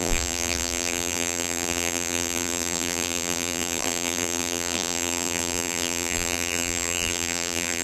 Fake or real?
fake